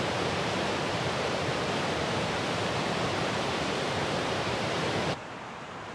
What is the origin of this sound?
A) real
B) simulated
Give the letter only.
B